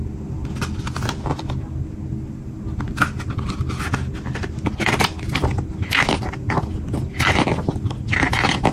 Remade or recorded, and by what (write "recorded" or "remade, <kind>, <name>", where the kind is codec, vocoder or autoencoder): recorded